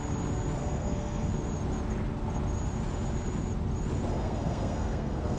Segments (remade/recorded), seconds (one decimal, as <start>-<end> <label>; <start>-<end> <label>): 0.0-0.6 recorded; 0.6-1.3 remade; 1.3-4.1 recorded; 4.1-5.4 remade